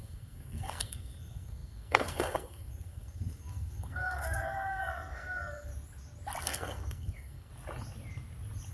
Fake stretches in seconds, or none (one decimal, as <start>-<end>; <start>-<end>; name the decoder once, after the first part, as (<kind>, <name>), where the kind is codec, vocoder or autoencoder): 0.0-5.7 (codec, SNAC); 6.4-7.5